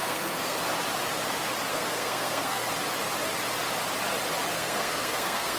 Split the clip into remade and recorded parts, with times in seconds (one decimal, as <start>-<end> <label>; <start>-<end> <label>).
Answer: 0.0-0.6 remade; 0.6-1.7 recorded; 1.7-2.7 remade; 2.7-4.5 recorded; 4.5-5.6 remade